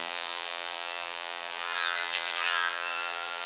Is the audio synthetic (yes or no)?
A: yes